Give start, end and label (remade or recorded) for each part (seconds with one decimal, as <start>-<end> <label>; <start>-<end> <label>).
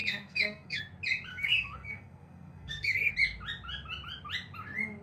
0.0-0.8 remade; 0.8-1.3 recorded; 1.3-3.1 remade; 3.1-5.0 recorded